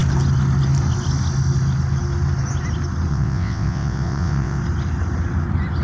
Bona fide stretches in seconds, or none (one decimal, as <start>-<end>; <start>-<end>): 0.0-3.1; 4.6-5.8